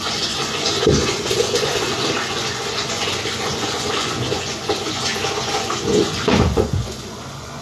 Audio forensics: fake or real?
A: fake